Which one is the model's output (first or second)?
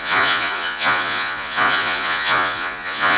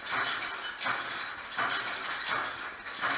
first